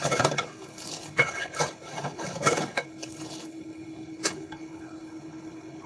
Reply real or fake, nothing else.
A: fake